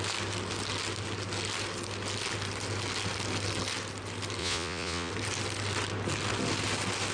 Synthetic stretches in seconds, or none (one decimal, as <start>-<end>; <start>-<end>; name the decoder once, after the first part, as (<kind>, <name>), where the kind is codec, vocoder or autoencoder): 4.4-5.1 (vocoder, Vocos)